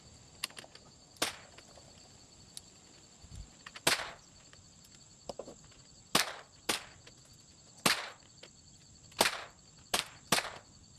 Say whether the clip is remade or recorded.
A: recorded